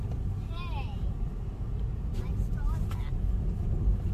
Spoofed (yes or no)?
no